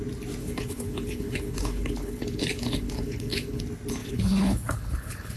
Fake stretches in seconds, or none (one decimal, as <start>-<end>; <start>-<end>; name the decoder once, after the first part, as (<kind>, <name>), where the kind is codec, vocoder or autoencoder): 0.4-3.6 (codec, HILCodec); 4.0-5.4